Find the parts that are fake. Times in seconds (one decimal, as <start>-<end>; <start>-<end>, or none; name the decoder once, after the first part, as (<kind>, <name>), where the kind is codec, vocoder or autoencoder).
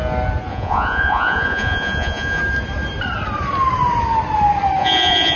0.5-2.4 (vocoder, Vocos); 4.8-5.4